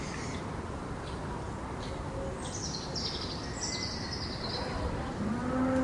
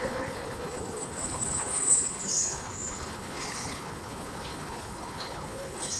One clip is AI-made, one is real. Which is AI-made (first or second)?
second